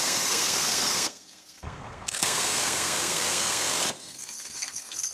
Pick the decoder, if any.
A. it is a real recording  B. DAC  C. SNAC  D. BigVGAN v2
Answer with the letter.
C